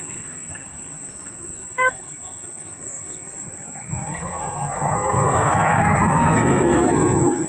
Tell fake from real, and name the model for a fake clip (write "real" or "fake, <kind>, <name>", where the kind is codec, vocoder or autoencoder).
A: fake, codec, SNAC